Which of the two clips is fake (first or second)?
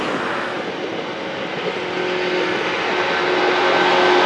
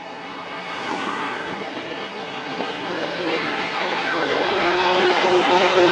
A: second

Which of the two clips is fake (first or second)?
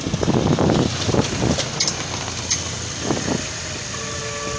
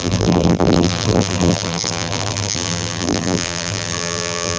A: second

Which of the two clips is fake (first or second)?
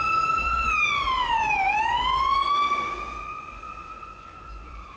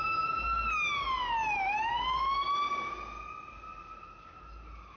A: first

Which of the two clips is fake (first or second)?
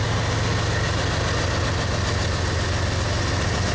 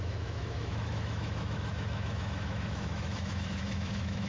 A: second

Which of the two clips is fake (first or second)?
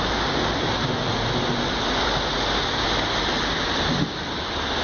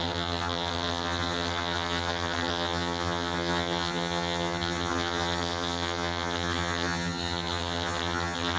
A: second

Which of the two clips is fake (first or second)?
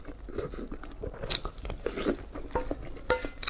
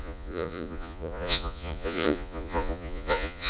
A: second